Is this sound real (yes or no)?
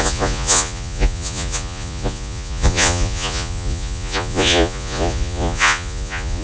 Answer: no